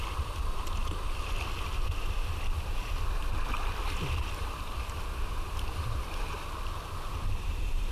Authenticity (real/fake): real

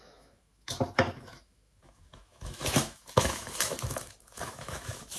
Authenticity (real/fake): fake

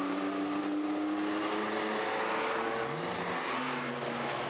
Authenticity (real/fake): real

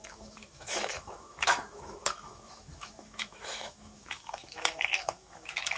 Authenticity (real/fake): fake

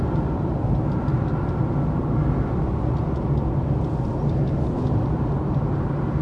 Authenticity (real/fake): real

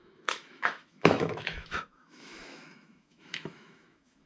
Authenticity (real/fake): fake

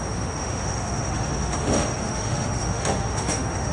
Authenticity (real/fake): fake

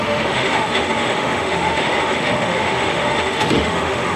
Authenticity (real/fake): fake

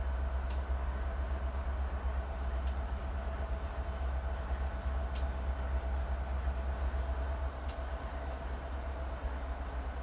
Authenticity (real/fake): real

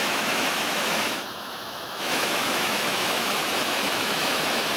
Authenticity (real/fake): fake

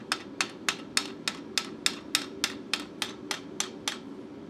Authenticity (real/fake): real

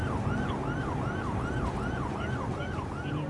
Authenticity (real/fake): real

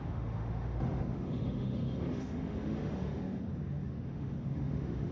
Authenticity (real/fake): fake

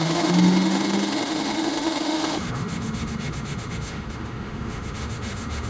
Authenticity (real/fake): fake